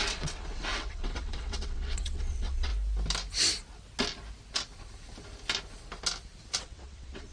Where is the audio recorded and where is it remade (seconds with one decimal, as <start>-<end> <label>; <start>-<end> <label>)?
0.0-2.7 remade; 2.7-6.6 recorded; 6.6-7.3 remade